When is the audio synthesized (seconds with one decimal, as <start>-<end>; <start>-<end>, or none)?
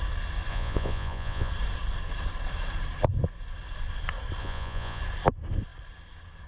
0.5-1.5; 4.4-5.0